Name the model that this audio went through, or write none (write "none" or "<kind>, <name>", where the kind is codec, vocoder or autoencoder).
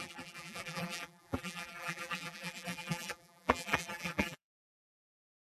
vocoder, BigVGAN v2